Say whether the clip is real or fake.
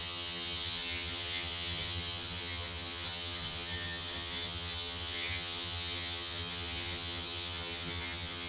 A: fake